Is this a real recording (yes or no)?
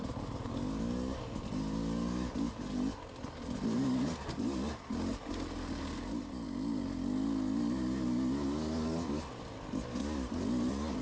yes